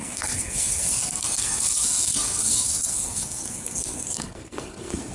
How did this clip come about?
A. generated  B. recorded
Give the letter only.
A